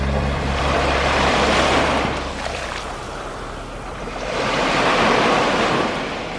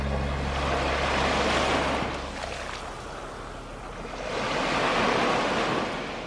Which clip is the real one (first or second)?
second